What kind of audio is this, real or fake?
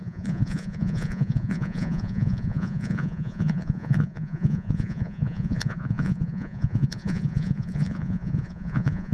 fake